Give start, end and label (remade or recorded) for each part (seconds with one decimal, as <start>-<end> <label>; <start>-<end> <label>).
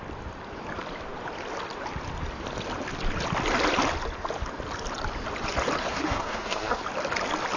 0.0-5.8 recorded; 5.8-6.8 remade; 6.8-7.6 recorded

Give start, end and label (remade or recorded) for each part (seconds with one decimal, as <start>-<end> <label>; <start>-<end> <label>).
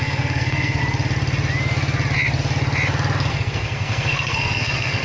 0.0-0.8 remade; 0.8-3.3 recorded; 3.3-5.0 remade